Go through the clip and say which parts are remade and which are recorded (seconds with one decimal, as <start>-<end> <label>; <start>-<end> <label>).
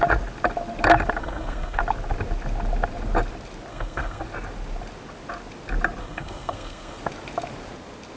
0.0-1.2 recorded; 1.2-1.8 remade; 1.8-3.7 recorded; 3.7-4.2 remade; 4.2-6.0 recorded; 6.0-7.0 remade; 7.0-8.2 recorded